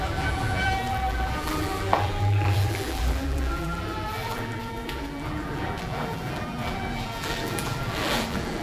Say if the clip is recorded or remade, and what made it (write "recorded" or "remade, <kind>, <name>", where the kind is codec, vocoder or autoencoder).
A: remade, vocoder, BigVGAN v2